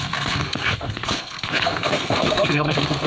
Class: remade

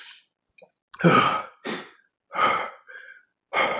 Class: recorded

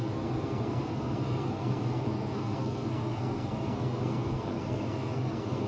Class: remade